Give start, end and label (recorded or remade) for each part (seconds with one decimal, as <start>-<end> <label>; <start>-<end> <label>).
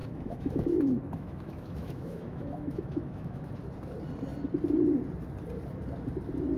0.0-3.5 remade; 3.5-6.6 recorded